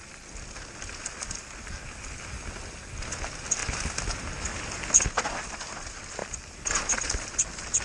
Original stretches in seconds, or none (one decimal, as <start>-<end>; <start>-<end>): 0.0-7.8